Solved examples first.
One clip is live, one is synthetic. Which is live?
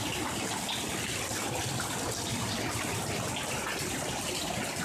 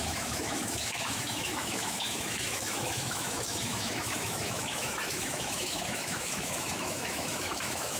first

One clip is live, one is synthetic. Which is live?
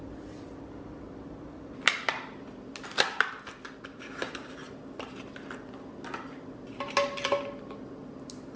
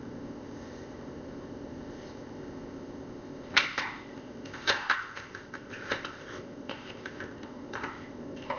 first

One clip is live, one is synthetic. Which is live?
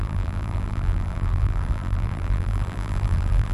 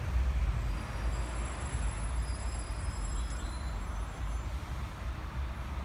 second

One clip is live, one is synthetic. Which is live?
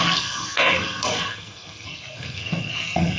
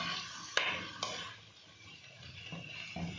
second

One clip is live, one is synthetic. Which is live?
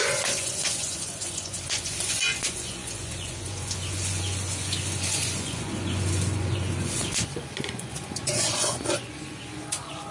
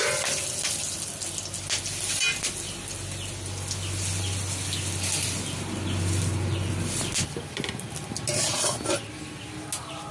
second